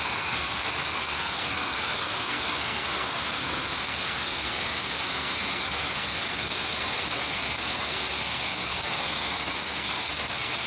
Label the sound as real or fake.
fake